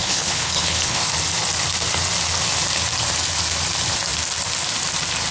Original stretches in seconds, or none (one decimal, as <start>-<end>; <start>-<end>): 1.1-5.3